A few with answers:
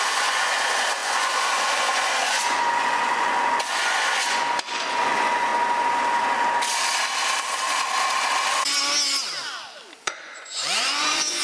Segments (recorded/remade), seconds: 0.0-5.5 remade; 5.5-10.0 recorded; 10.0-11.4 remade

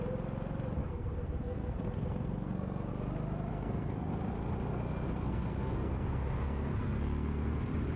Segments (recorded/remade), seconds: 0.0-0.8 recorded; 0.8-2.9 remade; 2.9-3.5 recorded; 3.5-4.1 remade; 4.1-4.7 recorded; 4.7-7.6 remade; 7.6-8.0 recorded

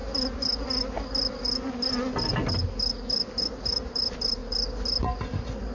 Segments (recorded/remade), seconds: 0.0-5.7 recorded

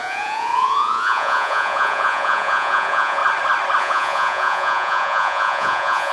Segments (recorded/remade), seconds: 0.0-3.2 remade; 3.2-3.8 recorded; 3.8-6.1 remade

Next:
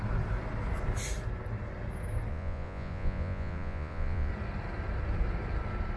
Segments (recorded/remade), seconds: 0.0-2.3 recorded; 2.3-4.3 remade; 4.3-6.0 recorded